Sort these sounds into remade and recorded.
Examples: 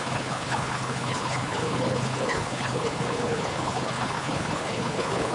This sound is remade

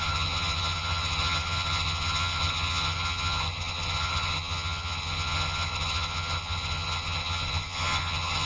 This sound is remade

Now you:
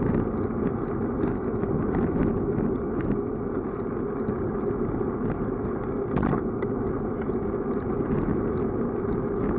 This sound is recorded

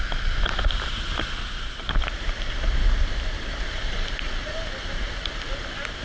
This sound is recorded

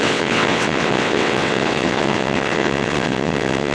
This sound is remade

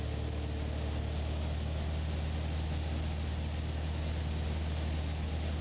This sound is recorded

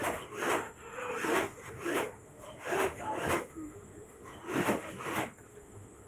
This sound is remade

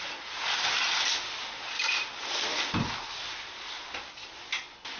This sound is recorded